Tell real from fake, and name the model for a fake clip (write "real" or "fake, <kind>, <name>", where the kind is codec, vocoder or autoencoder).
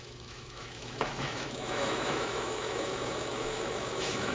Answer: fake, autoencoder, DAC-VAE